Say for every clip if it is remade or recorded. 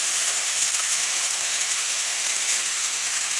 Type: remade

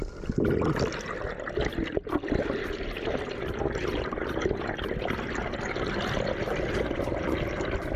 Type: recorded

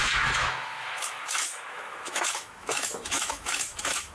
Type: remade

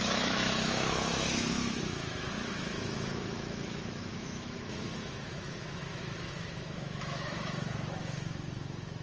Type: remade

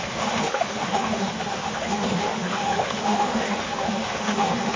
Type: remade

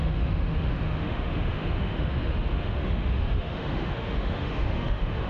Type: remade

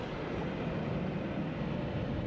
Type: recorded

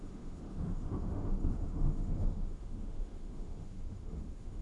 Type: remade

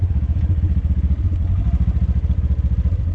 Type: recorded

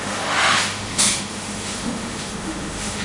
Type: remade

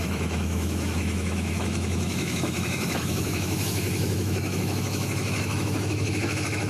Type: remade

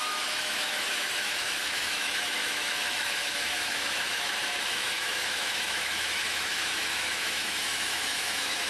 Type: remade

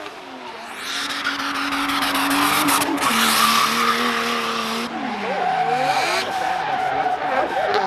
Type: recorded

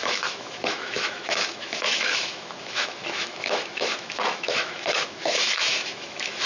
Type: remade